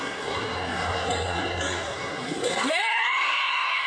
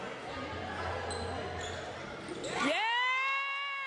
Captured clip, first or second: second